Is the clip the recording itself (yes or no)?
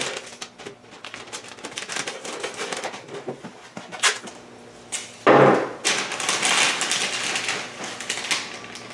yes